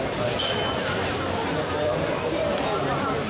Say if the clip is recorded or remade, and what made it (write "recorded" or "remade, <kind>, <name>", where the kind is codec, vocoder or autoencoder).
recorded